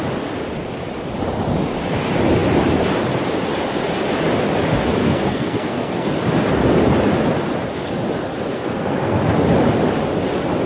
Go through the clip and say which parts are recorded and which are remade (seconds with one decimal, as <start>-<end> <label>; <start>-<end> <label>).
0.0-5.0 recorded; 5.0-6.1 remade; 6.1-8.5 recorded; 8.5-9.2 remade; 9.2-10.7 recorded